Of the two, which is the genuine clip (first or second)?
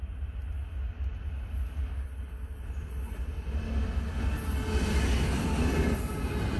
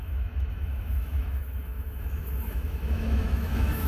first